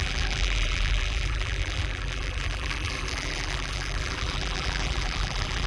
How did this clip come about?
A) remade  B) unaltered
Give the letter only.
A